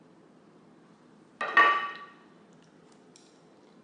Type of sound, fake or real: real